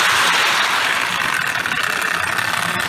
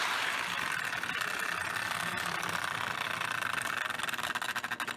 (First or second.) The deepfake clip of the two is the first